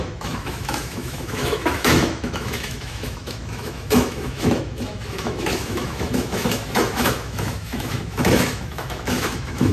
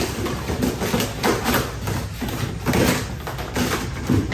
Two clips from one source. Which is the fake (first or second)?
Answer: first